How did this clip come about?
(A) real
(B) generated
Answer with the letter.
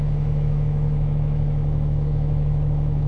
B